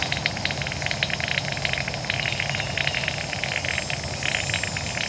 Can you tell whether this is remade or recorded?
recorded